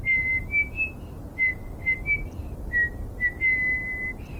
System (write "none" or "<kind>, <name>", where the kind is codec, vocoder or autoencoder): none